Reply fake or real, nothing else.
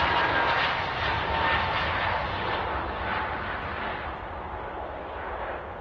real